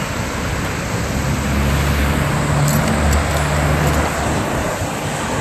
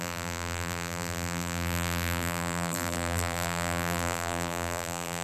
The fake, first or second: second